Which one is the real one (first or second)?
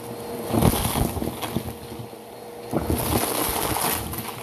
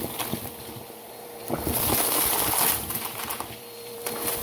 first